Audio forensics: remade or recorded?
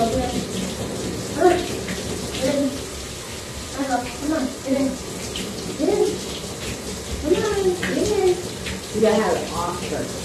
remade